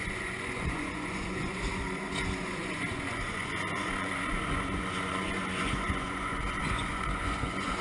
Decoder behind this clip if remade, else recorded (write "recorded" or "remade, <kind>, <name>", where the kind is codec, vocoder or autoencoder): remade, vocoder, Vocos